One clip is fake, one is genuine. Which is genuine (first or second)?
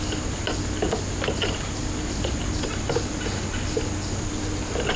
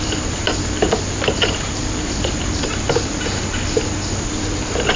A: first